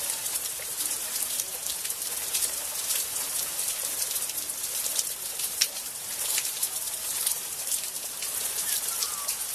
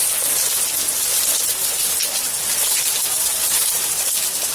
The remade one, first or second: first